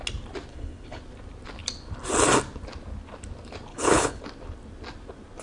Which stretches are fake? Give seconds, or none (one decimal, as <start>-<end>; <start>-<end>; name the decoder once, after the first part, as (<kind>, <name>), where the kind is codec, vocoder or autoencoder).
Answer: 0.5-1.0 (codec, HILCodec); 3.7-4.2